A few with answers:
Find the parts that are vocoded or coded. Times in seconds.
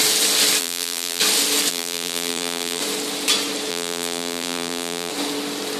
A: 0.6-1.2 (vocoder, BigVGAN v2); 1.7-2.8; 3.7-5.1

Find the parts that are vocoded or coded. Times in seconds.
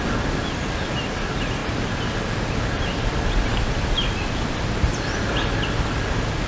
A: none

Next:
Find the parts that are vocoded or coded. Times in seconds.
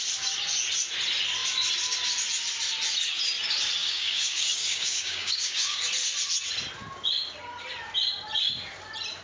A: 3.8-5.8 (codec, DAC)